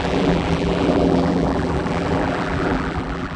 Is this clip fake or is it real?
fake